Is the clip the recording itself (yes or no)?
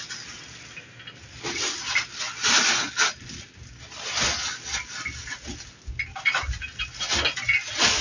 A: yes